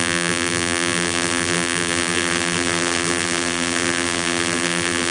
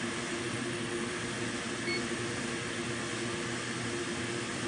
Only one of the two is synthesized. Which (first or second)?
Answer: first